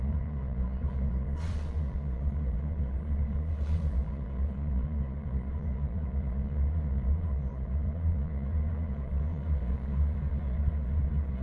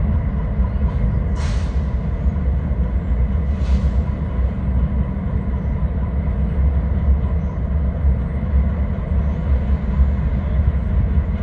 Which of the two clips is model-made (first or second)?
first